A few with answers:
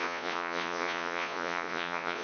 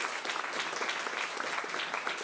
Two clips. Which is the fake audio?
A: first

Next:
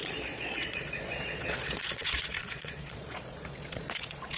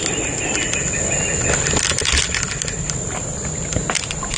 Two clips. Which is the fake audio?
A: first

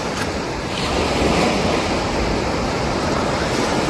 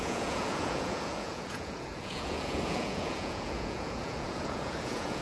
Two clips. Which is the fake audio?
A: second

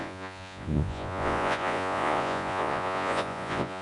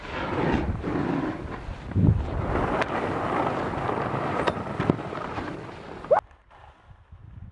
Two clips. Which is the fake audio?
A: first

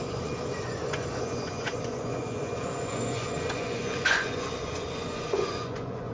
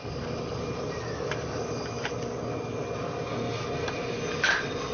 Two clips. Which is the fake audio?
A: first